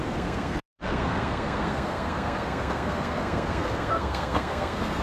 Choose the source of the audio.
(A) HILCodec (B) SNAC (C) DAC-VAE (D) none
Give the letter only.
B